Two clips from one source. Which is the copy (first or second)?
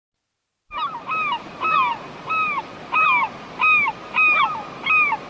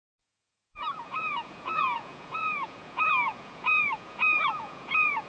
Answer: second